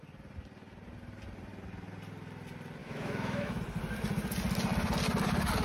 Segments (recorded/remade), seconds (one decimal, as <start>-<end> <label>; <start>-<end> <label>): 0.0-2.8 recorded; 2.8-3.6 remade; 3.6-5.6 recorded